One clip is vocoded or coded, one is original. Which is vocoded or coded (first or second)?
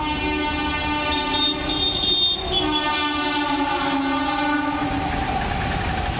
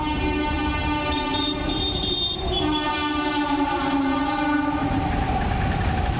second